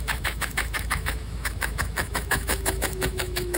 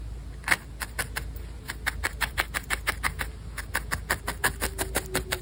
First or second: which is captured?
second